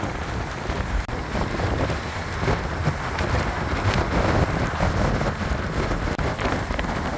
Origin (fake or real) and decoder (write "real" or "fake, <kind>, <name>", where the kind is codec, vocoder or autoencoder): real